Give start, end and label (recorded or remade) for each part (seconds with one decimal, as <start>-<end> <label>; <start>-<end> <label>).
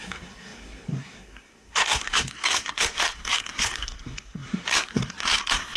0.0-5.8 remade